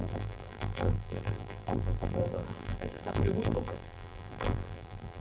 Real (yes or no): no